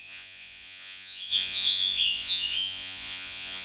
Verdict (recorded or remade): remade